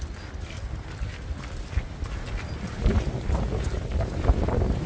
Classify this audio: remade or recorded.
recorded